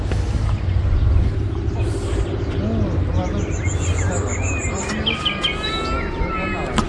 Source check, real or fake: real